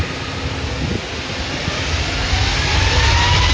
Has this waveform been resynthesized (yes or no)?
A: no